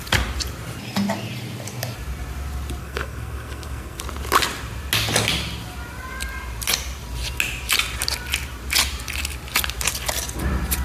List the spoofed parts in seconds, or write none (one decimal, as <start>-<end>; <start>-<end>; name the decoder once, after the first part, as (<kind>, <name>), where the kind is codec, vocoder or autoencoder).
2.8-4.0 (codec, SNAC)